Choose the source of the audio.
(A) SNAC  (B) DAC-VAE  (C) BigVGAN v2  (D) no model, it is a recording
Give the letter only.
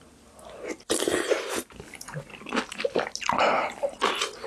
D